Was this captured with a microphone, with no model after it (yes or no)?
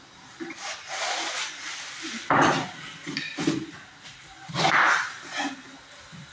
yes